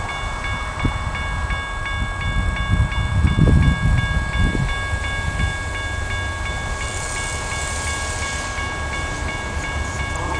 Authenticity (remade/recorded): recorded